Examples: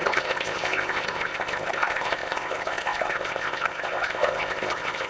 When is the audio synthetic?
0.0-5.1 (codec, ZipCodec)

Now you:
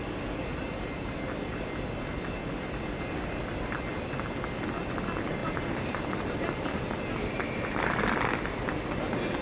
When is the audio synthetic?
0.5-1.2 (vocoder, BigVGAN v2); 5.4-8.0

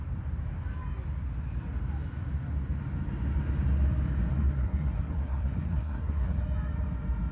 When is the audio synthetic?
4.3-6.4 (codec, SNAC)

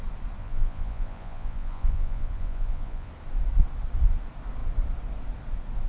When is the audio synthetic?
0.4-3.1 (vocoder, Vocos)

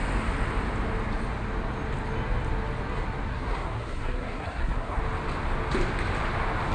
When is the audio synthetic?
3.3-5.0 (codec, SNAC)

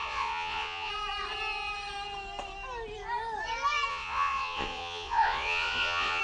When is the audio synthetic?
0.0-0.9 (vocoder, Vocos); 3.9-6.2